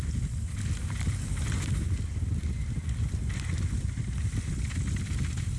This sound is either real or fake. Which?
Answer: real